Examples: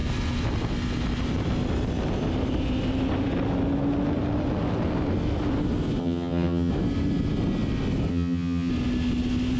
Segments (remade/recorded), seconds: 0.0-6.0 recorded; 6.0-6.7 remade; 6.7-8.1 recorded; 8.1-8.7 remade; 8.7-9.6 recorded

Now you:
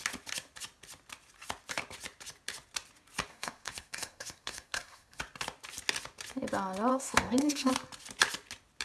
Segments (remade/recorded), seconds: 0.0-3.3 recorded; 3.3-5.2 remade; 5.2-6.9 recorded; 6.9-7.7 remade; 7.7-8.8 recorded

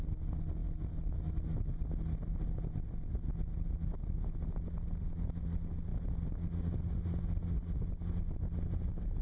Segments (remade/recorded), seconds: 0.0-9.2 recorded

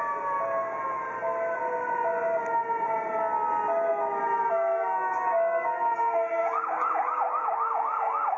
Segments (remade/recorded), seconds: 0.0-4.5 recorded; 4.5-8.4 remade